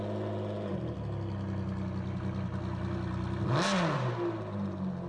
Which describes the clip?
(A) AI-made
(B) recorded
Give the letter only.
B